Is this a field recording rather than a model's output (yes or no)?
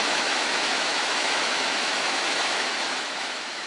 no